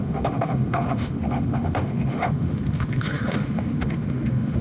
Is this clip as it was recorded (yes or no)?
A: no